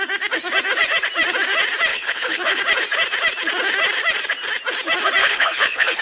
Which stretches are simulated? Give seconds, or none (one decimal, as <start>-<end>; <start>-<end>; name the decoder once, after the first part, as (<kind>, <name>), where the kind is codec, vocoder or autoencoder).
1.9-2.6 (codec, HILCodec); 5.2-6.0